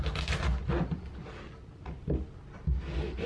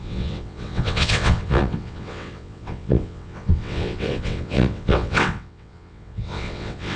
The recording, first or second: first